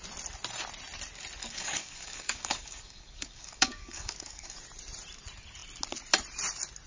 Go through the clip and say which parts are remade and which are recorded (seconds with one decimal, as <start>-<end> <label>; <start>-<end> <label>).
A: 0.0-1.4 recorded; 1.4-4.6 remade; 4.6-6.9 recorded